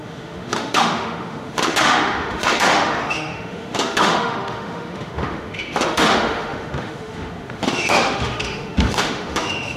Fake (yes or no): yes